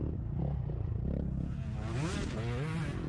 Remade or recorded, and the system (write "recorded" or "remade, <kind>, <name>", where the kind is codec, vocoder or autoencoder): recorded